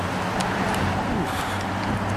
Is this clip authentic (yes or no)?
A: yes